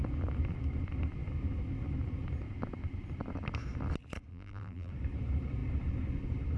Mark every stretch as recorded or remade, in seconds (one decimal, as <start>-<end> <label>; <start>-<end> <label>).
0.0-4.3 recorded; 4.3-4.9 remade; 4.9-6.6 recorded

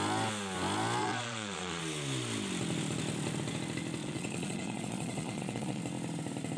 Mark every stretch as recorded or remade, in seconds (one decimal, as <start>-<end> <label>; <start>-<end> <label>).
0.0-1.0 recorded; 1.0-1.8 remade; 1.8-4.0 recorded; 4.0-5.8 remade; 5.8-6.6 recorded

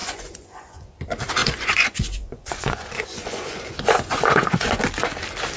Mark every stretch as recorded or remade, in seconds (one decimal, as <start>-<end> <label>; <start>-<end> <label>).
0.0-0.9 remade; 0.9-1.4 recorded; 1.4-4.8 remade; 4.8-5.6 recorded

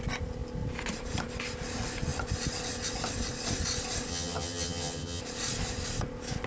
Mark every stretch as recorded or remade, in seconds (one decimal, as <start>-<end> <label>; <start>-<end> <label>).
0.0-4.1 recorded; 4.1-5.2 remade; 5.2-6.5 recorded